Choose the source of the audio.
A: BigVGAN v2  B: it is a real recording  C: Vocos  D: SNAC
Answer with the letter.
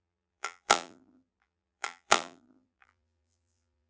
A